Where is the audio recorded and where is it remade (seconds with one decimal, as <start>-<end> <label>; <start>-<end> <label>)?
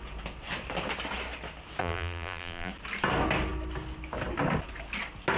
0.0-1.8 recorded; 1.8-2.7 remade; 2.7-5.4 recorded